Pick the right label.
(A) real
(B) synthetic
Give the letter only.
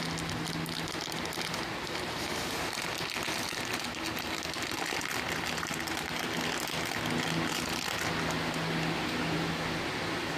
A